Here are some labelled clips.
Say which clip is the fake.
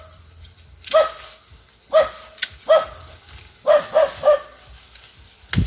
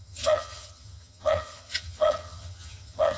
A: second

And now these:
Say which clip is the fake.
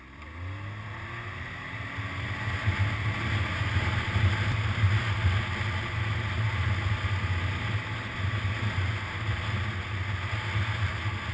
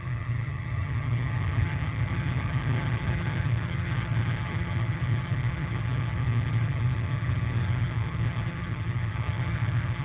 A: second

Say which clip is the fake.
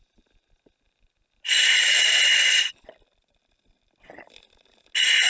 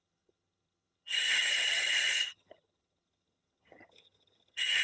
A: second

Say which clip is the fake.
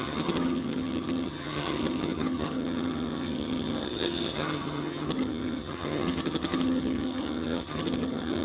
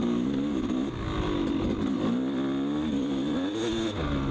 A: first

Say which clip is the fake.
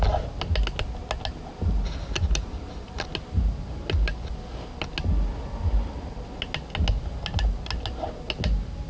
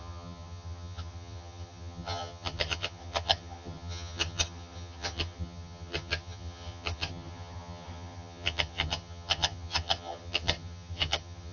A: second